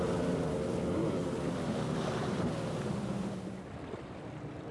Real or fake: fake